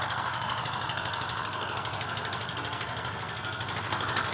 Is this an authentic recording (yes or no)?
no